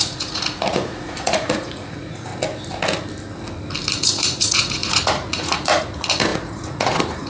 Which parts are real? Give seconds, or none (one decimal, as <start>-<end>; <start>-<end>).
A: 2.3-3.9